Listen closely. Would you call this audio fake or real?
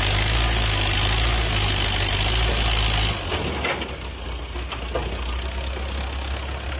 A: real